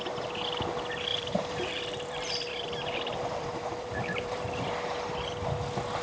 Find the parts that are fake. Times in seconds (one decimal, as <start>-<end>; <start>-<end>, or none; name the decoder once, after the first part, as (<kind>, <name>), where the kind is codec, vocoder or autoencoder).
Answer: 1.1-4.7 (vocoder, BigVGAN v2)